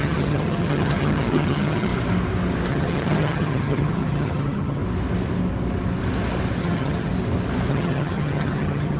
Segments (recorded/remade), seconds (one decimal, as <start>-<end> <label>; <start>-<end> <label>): 0.0-1.9 remade; 1.9-2.7 recorded; 2.7-4.8 remade; 4.8-6.6 recorded; 6.6-7.1 remade; 7.1-7.7 recorded; 7.7-9.0 remade